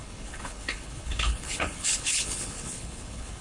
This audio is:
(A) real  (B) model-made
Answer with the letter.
B